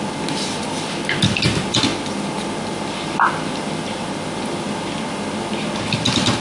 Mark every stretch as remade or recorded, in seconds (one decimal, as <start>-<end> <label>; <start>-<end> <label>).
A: 0.0-6.4 recorded